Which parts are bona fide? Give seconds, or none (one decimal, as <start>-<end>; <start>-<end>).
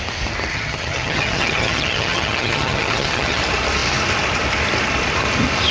0.0-0.5; 3.4-5.7